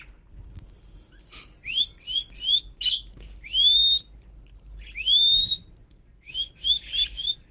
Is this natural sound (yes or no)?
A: yes